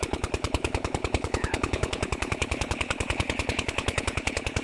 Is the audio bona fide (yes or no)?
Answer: no